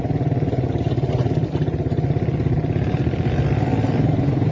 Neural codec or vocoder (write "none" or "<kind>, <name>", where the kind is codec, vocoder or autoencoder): none